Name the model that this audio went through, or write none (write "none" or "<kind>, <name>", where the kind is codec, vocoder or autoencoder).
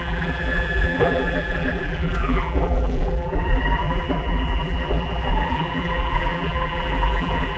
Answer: vocoder, BigVGAN v2